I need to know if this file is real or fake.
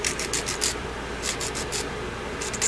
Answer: real